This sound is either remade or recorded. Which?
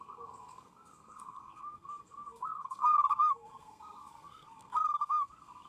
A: remade